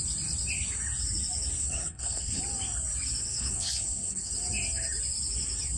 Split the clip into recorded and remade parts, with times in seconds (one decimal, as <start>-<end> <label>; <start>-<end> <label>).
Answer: 0.0-1.6 recorded; 1.6-2.4 remade; 2.4-3.2 recorded; 3.2-4.3 remade; 4.3-5.8 recorded